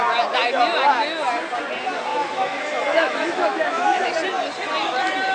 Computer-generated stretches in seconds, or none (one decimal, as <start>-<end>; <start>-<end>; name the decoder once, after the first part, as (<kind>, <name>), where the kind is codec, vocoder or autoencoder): 2.1-4.1 (autoencoder, DAC-VAE)